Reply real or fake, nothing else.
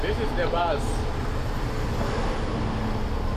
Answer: real